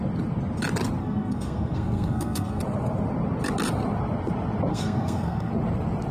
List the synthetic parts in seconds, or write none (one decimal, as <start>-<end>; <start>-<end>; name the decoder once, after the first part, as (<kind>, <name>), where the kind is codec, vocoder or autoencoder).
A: 1.0-2.6 (codec, SNAC); 4.7-5.5